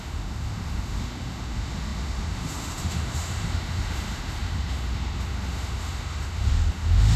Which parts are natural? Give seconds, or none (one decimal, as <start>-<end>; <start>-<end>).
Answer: none